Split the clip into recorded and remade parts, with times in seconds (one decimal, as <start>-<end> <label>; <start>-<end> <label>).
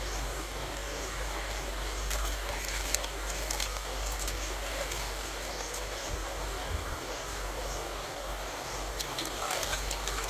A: 0.0-10.3 remade